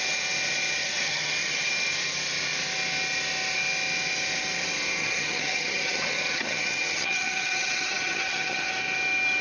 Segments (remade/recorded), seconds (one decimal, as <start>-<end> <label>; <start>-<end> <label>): 0.0-0.8 recorded; 0.8-1.7 remade; 1.7-5.0 recorded; 5.0-8.7 remade; 8.7-9.4 recorded

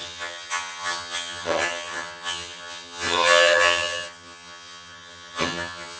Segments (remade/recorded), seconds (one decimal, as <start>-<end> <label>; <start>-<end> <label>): 0.0-6.0 remade

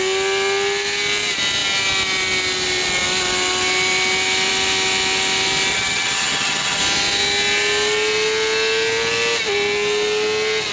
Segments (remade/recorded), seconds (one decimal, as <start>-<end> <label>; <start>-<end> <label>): 0.0-5.7 recorded; 5.7-6.8 remade; 6.8-10.7 recorded

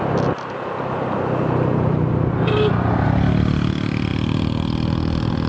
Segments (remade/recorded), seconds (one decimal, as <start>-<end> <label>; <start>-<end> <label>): 0.0-5.5 recorded

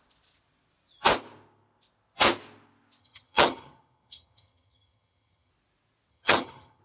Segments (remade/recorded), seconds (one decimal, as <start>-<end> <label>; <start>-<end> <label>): 0.0-3.0 recorded; 3.0-5.5 remade; 5.5-6.1 recorded; 6.1-6.8 remade

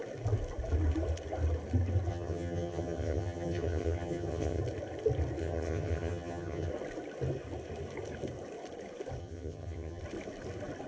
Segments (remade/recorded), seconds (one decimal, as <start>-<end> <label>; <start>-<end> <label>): 0.0-2.1 recorded; 2.1-4.6 remade; 4.6-5.4 recorded; 5.4-6.7 remade; 6.7-9.2 recorded; 9.2-10.0 remade; 10.0-10.9 recorded

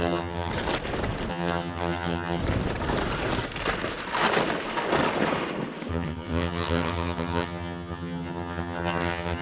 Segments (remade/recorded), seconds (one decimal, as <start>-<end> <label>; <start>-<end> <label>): 0.0-0.5 remade; 0.5-1.3 recorded; 1.3-2.4 remade; 2.4-5.9 recorded; 5.9-9.4 remade

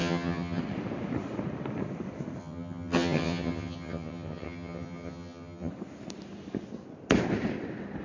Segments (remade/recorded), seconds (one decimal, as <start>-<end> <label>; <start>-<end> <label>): 0.0-0.6 remade; 0.6-2.4 recorded; 2.4-5.7 remade; 5.7-8.0 recorded